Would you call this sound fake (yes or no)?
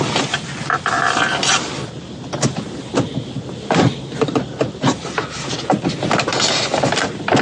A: no